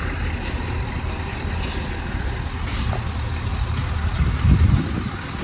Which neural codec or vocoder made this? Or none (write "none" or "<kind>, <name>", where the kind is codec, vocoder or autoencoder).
none